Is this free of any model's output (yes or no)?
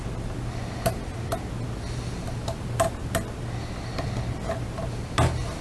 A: yes